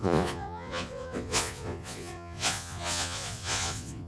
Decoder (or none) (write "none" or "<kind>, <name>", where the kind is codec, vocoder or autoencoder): vocoder, Vocos